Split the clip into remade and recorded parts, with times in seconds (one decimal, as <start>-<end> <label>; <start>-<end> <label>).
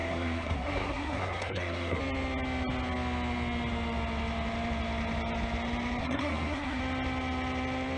0.0-2.0 remade; 2.0-6.0 recorded; 6.0-6.8 remade; 6.8-8.0 recorded